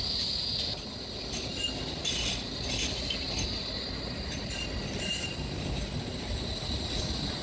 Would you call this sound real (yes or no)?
yes